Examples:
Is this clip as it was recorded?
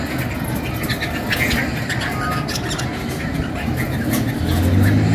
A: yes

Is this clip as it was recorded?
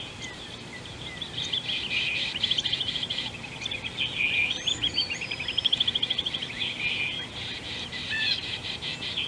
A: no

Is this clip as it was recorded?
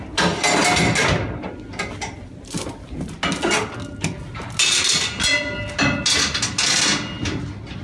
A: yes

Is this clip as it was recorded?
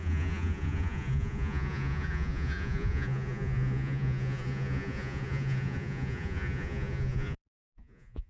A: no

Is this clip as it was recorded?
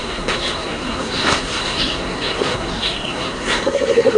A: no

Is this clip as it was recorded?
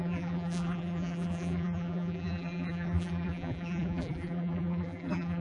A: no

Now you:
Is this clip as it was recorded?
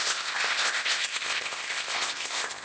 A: no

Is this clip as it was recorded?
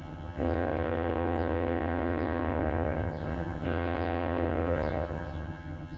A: no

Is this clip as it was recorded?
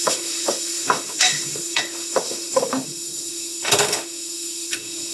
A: no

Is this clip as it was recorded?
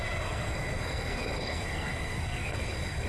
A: no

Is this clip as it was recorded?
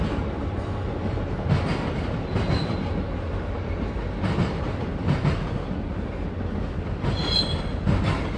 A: yes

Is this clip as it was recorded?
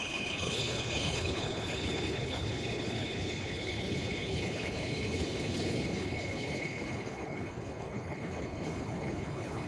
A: no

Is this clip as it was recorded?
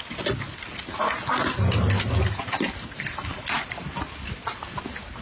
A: yes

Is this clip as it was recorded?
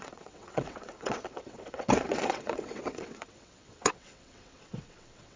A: no